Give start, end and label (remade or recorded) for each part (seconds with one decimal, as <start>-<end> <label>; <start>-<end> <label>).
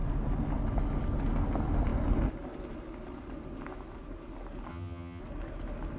0.0-4.7 recorded; 4.7-5.2 remade; 5.2-6.0 recorded